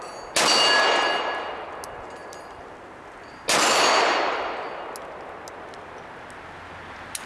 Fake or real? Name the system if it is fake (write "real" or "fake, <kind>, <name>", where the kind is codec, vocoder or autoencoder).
real